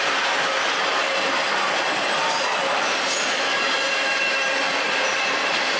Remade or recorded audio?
recorded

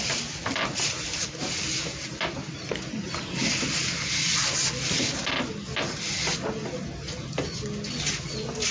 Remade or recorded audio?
recorded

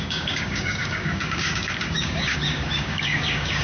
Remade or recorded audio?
remade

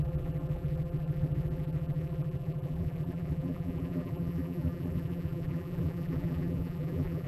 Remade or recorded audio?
remade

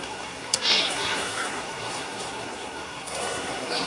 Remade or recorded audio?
remade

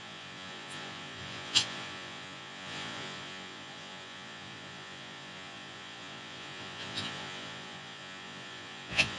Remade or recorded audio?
remade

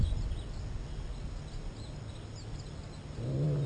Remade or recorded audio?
recorded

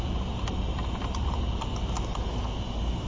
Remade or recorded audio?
recorded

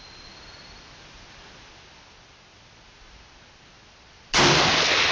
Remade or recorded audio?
recorded